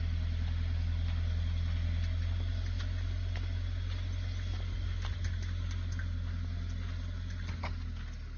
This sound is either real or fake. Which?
real